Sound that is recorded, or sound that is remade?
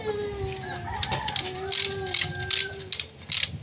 recorded